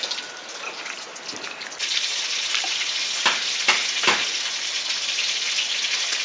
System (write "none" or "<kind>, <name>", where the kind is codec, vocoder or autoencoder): none